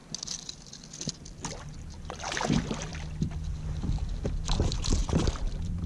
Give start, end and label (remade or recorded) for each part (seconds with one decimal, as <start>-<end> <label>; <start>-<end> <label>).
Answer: 0.0-0.7 remade; 0.7-5.0 recorded; 5.0-5.9 remade